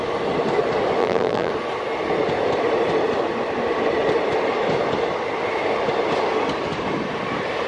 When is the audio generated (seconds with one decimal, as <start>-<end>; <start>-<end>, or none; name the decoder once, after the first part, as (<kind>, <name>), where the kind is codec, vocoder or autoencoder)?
1.0-1.5 (vocoder, BigVGAN v2)

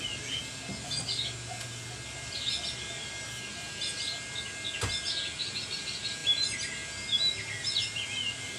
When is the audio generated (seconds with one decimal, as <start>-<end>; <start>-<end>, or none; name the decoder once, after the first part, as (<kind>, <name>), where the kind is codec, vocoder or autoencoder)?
0.0-0.4 (vocoder, BigVGAN v2); 5.3-6.2; 7.6-8.6

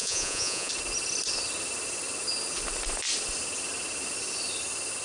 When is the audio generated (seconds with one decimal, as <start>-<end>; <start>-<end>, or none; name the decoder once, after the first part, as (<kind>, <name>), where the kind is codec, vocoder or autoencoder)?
0.0-0.7 (vocoder, Vocos)

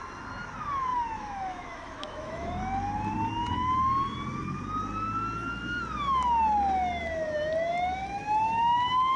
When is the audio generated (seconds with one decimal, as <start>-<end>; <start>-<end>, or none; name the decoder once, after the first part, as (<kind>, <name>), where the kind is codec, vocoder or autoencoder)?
0.9-2.6 (autoencoder, DAC-VAE)

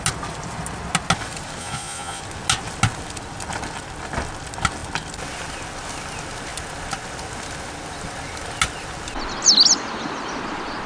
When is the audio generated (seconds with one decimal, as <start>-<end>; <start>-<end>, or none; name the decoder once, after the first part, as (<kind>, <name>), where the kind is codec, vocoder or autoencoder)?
1.6-2.2 (vocoder, Vocos)

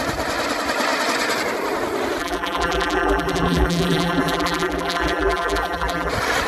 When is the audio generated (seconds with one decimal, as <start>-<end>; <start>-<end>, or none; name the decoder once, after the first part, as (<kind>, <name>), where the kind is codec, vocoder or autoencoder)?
2.2-6.1 (vocoder, BigVGAN v2)

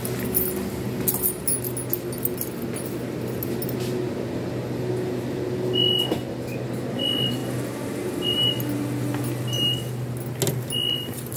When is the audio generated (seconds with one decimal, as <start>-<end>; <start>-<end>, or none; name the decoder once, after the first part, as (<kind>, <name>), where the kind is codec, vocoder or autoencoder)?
none